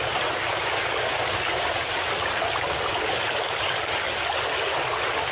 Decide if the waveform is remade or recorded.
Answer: recorded